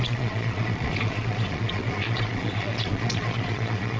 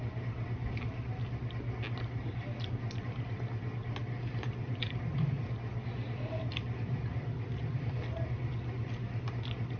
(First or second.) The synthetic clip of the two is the first